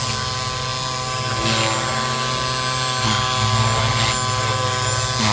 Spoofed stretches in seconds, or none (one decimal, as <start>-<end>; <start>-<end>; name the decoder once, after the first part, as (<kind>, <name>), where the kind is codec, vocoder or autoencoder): none